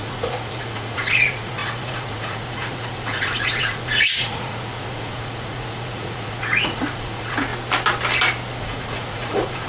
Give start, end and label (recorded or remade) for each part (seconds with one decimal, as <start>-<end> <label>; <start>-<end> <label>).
0.0-7.5 remade; 7.5-8.6 recorded; 8.6-9.7 remade